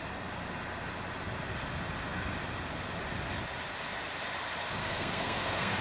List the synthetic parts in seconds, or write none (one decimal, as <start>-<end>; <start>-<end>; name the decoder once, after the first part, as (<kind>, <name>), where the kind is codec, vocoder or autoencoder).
4.8-5.8 (codec, SNAC)